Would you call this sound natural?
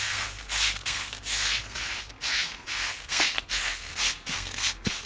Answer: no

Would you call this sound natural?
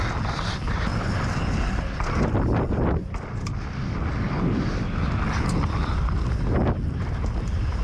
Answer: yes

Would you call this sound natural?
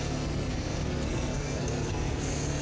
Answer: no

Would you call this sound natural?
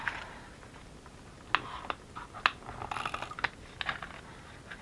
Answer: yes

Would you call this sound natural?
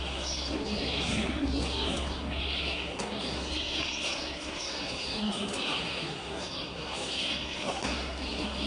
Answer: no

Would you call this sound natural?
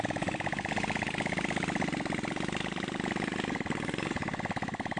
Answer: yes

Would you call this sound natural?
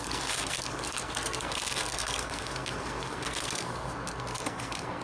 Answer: no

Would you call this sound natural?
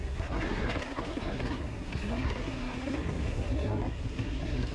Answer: no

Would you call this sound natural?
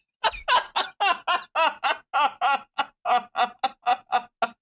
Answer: yes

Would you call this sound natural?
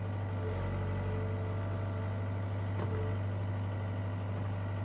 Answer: yes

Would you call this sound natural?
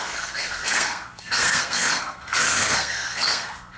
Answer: no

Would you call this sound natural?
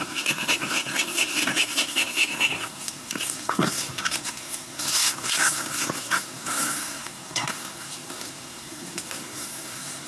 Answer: no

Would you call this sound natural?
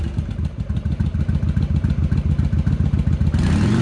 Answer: yes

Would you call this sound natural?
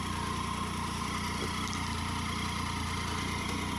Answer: yes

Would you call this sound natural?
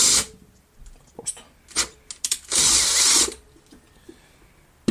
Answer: yes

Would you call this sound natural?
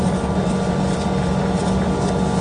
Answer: yes